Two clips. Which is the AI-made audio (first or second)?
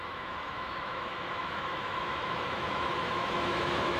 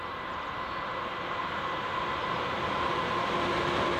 first